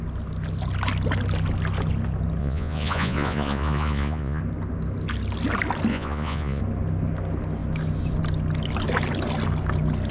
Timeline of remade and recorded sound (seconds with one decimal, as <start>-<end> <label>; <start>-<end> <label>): 0.0-2.4 recorded; 2.4-4.4 remade; 4.4-5.9 recorded; 5.9-6.6 remade; 6.6-10.1 recorded